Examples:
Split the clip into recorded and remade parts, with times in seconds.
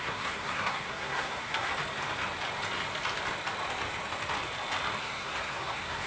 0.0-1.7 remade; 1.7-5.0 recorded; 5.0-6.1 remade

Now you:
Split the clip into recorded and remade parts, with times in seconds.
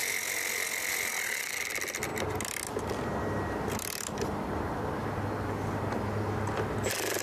0.0-7.2 recorded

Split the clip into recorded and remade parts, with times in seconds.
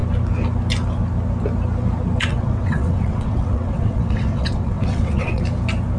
0.0-2.3 recorded; 2.3-5.4 remade; 5.4-6.0 recorded